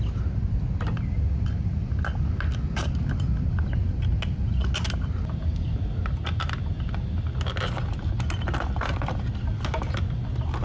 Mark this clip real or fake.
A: real